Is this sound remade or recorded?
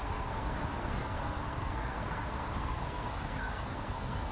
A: remade